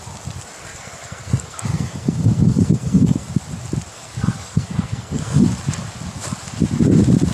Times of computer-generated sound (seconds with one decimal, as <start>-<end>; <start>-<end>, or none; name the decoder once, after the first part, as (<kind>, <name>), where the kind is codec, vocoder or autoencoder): 0.6-3.3 (codec, SNAC); 3.9-5.4